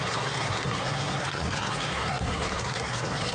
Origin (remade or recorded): remade